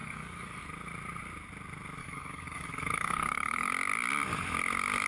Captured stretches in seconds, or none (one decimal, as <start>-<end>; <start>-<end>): 0.6-2.0; 3.7-5.1